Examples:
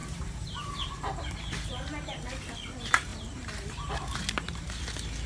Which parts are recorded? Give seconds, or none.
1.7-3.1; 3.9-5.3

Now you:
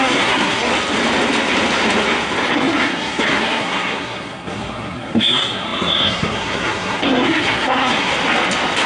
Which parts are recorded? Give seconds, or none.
0.7-2.5; 8.1-8.9